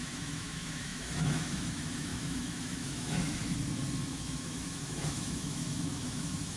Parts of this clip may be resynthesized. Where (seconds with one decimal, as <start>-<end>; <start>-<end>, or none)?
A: 0.0-3.4; 4.1-6.6